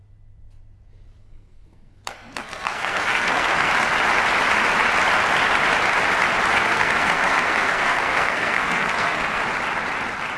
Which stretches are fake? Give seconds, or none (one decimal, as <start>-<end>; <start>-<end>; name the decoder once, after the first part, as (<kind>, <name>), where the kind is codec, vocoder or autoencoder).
1.2-3.7 (codec, SNAC); 6.5-9.4